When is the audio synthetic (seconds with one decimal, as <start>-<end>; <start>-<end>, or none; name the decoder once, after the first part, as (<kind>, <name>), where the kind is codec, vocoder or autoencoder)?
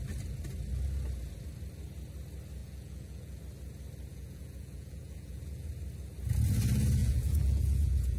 2.6-3.4 (vocoder, Vocos); 4.1-5.7; 7.0-8.2